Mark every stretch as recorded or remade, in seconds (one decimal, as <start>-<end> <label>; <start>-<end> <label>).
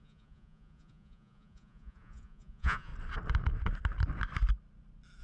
0.0-2.9 remade; 2.9-5.2 recorded